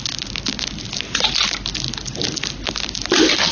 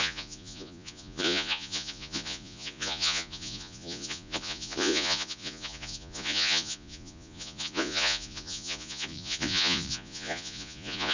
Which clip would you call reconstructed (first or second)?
second